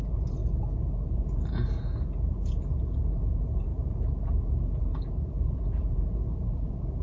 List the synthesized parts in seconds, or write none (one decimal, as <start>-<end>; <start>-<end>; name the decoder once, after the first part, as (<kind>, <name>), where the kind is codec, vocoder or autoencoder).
0.0-0.4 (vocoder, Vocos); 1.1-3.7; 4.4-7.0